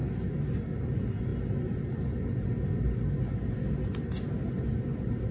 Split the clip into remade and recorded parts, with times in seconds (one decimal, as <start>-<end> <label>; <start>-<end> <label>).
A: 0.0-5.3 recorded